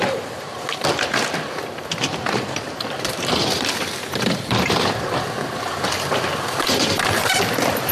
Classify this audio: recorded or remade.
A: remade